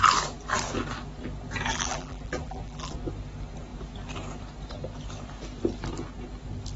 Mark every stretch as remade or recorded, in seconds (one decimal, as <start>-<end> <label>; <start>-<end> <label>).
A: 0.0-1.7 recorded; 1.7-2.9 remade; 2.9-6.8 recorded

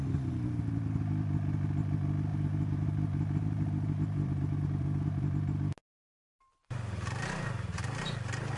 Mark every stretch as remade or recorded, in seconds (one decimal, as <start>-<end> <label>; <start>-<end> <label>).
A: 0.0-2.3 recorded; 2.3-5.3 remade; 5.3-8.6 recorded